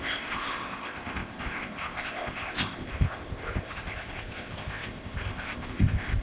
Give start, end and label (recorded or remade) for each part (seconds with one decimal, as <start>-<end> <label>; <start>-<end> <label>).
0.0-6.2 remade